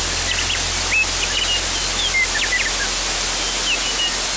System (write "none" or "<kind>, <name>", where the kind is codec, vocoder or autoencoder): none